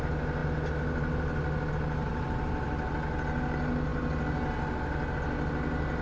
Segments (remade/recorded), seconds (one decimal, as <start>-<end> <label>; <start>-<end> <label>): 0.0-2.1 recorded; 2.1-2.9 remade; 2.9-6.0 recorded